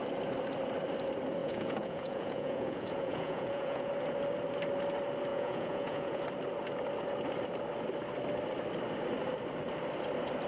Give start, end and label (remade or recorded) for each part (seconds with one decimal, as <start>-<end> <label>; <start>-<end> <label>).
0.0-1.4 recorded; 1.4-3.9 remade; 3.9-5.3 recorded; 5.3-6.2 remade; 6.2-10.5 recorded